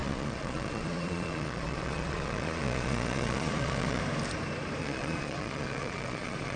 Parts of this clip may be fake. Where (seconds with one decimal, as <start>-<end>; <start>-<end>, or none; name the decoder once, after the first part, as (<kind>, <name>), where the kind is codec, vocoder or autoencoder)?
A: 0.0-4.0 (vocoder, Vocos); 4.8-6.6